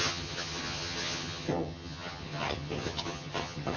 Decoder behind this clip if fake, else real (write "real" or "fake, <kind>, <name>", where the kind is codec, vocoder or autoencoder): fake, vocoder, HiFi-GAN